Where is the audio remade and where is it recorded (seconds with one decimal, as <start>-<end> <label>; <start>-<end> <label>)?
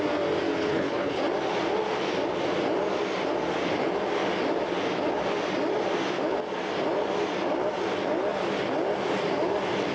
0.0-0.6 recorded; 0.6-1.2 remade; 1.2-9.9 recorded